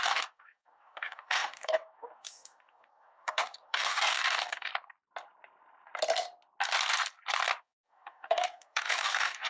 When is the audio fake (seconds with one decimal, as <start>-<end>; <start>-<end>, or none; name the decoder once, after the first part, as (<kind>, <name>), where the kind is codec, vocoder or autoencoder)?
0.0-4.7 (codec, DAC); 7.6-9.5

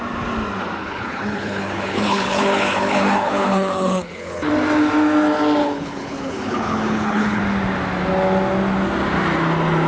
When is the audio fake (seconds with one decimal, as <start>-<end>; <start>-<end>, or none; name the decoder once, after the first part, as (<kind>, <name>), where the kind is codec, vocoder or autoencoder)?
0.8-4.5 (codec, HILCodec); 5.6-7.4

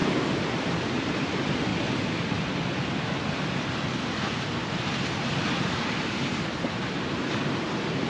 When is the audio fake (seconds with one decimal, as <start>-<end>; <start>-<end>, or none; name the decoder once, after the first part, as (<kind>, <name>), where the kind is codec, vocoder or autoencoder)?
0.7-1.7 (vocoder, BigVGAN v2); 4.7-8.1